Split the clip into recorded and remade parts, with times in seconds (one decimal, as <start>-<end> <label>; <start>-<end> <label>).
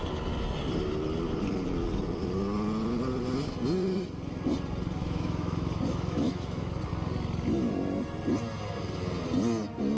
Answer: 0.0-5.0 recorded; 5.0-6.8 remade; 6.8-10.0 recorded